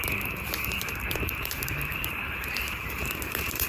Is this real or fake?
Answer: fake